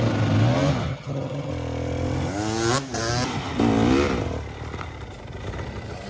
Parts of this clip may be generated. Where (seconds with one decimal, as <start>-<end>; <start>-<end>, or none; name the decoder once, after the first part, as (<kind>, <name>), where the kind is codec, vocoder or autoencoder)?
0.9-1.5 (vocoder, HiFi-GAN)